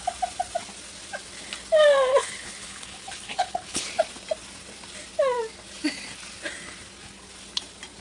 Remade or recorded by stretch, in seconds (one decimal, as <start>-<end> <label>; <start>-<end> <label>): 0.0-2.1 recorded; 2.1-3.9 remade; 3.9-8.0 recorded